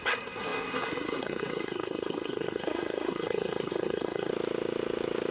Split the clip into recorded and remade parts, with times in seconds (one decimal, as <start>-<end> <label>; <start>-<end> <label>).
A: 0.0-4.3 remade; 4.3-5.3 recorded